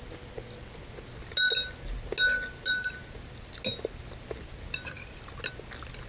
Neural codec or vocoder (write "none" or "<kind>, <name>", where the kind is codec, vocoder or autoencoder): none